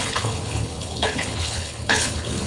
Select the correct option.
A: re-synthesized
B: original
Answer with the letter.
A